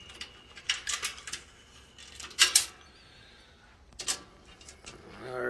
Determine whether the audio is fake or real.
real